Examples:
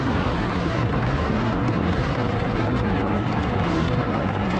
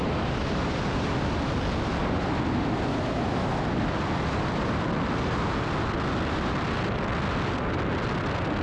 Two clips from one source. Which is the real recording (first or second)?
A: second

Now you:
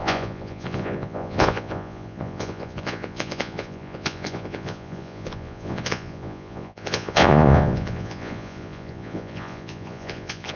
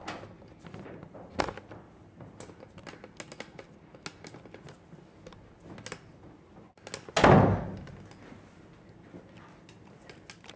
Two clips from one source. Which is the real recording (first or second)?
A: second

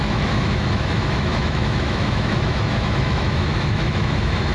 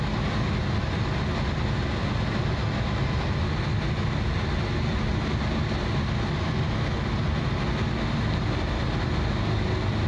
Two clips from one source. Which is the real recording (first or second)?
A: second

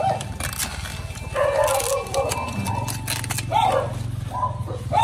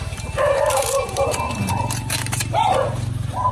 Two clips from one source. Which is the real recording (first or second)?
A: first